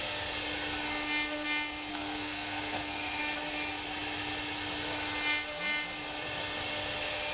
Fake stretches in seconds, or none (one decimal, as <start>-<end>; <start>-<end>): 1.9-3.2